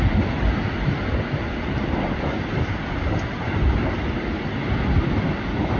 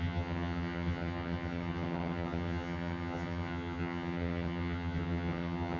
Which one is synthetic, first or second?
second